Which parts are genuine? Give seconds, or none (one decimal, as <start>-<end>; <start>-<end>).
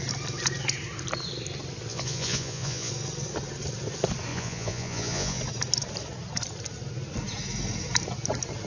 0.0-1.9; 2.9-4.3; 5.4-8.7